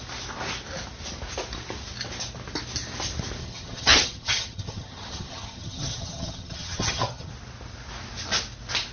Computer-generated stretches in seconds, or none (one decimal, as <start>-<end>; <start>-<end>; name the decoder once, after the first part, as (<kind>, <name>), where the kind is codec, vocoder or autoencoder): 3.4-7.3 (vocoder, HiFi-GAN)